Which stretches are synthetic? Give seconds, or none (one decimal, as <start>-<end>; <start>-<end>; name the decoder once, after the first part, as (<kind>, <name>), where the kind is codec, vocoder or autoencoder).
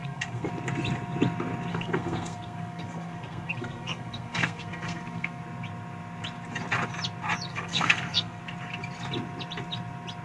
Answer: 0.0-0.5 (codec, SNAC); 1.7-5.4; 7.5-8.4